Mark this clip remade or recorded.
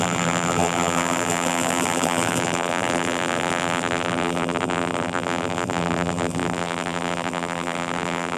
remade